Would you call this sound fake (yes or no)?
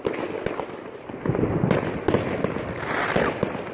no